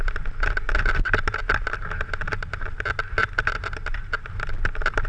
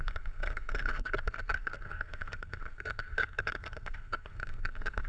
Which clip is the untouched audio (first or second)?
first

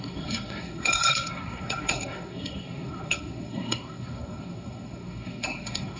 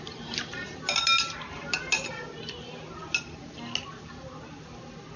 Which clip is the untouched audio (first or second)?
second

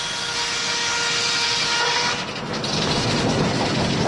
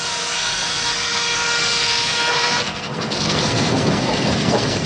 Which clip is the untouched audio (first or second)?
first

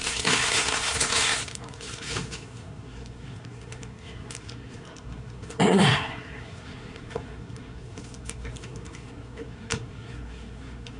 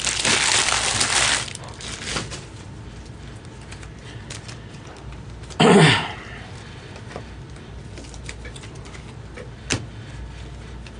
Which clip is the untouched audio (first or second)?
second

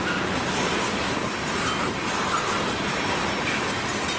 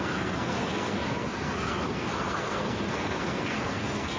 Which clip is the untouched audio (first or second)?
first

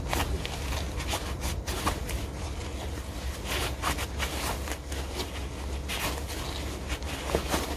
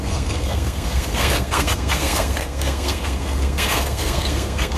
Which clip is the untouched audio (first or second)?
first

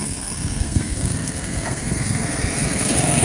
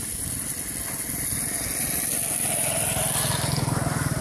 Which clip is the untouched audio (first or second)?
second